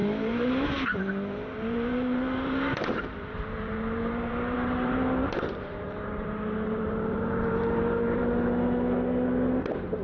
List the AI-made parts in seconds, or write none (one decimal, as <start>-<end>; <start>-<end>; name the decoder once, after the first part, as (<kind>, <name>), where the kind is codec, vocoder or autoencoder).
0.0-8.2 (vocoder, BigVGAN v2); 9.6-10.0